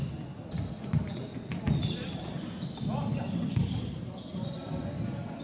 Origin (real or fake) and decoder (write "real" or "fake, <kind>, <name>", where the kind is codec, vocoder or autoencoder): real